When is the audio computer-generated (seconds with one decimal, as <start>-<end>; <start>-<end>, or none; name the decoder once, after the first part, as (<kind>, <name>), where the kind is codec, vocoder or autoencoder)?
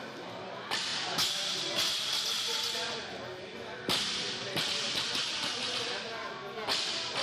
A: none